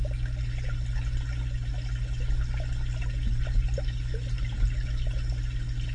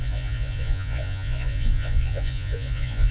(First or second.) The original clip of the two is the first